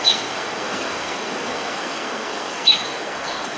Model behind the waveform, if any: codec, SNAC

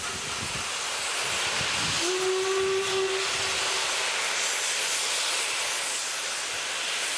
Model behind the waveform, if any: none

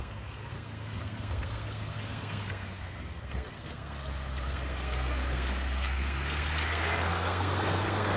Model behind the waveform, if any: codec, SNAC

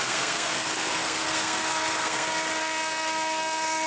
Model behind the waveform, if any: codec, SNAC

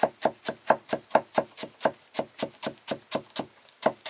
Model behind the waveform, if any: none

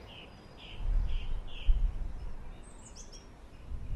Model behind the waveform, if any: none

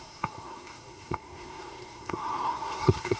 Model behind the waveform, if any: codec, SNAC